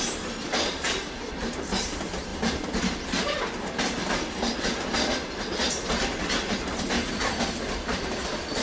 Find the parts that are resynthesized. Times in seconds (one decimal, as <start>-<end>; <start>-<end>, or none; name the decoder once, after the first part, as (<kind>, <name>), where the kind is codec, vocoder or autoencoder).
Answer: none